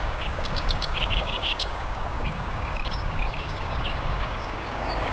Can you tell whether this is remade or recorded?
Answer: remade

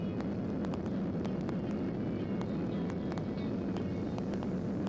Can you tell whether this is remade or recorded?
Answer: recorded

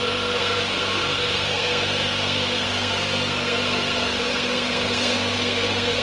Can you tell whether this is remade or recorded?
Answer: remade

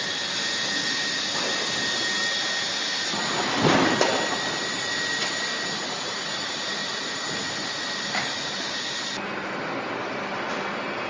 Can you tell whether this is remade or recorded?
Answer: recorded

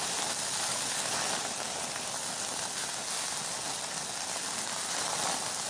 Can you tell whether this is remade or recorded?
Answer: recorded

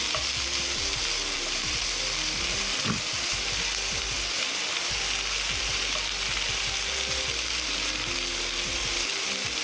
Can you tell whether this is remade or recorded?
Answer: recorded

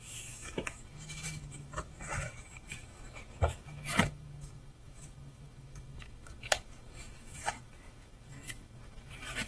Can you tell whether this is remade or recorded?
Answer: remade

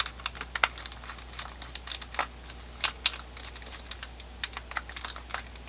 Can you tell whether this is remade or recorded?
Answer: recorded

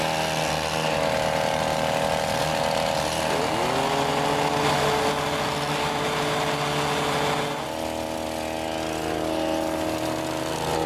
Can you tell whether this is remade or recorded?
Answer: recorded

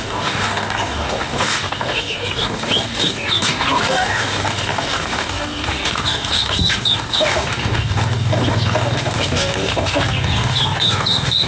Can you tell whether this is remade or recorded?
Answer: remade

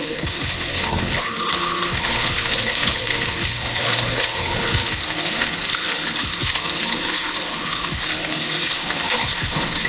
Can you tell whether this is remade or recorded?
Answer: remade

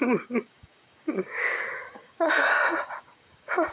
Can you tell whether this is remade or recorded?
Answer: remade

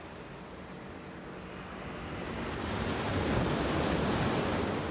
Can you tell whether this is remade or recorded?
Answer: recorded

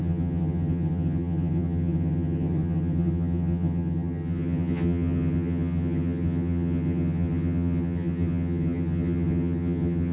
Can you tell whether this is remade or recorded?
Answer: remade